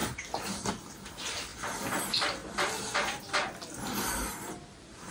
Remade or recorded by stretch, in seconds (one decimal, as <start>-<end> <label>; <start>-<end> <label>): 0.0-0.7 remade; 0.7-2.4 recorded; 2.4-3.5 remade; 3.5-5.1 recorded